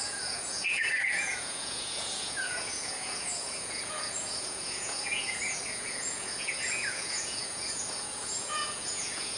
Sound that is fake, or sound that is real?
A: fake